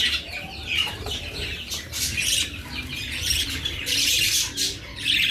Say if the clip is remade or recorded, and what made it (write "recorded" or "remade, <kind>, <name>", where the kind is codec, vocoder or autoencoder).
remade, vocoder, BigVGAN v2